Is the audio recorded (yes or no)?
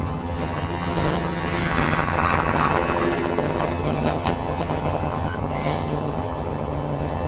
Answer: no